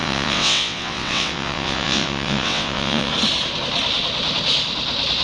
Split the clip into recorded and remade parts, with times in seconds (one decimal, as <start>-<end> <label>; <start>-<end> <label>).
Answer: 0.0-3.1 remade; 3.1-5.2 recorded